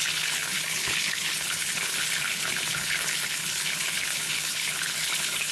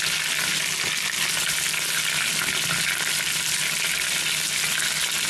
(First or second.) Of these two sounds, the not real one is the first